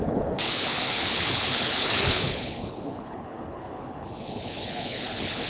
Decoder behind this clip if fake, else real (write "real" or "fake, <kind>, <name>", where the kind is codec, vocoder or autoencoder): fake, codec, HILCodec